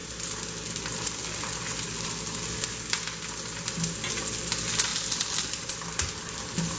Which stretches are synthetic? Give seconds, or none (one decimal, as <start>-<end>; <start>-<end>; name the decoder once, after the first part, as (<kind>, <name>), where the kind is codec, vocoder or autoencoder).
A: none